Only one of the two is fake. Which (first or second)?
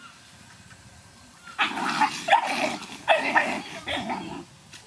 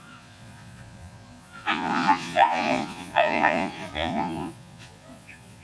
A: second